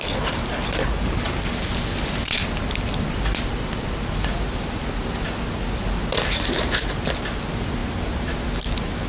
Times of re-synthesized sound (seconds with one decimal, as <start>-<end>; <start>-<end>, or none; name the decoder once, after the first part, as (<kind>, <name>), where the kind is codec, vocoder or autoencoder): none